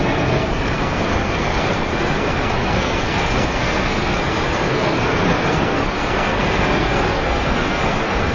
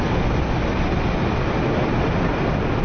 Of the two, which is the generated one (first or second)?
first